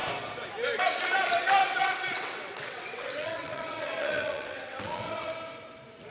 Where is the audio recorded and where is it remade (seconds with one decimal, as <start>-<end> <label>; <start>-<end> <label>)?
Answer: 0.0-1.6 recorded; 1.6-5.3 remade; 5.3-6.1 recorded